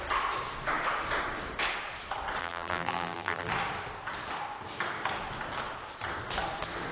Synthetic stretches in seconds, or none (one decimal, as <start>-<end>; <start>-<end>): 2.4-3.5